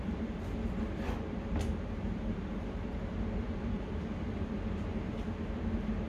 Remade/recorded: remade